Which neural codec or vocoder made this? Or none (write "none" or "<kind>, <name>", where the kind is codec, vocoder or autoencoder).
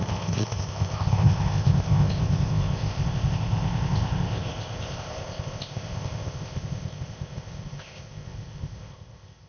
codec, ZipCodec